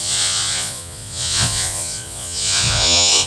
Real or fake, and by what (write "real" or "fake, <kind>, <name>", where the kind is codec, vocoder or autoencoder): fake, vocoder, Vocos